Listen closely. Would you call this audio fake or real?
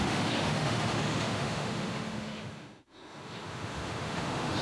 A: fake